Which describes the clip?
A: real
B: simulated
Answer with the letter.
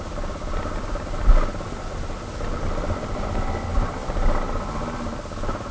A